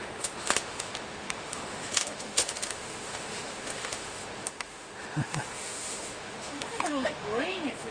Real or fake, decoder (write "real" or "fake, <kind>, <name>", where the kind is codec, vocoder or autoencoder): fake, autoencoder, DAC-VAE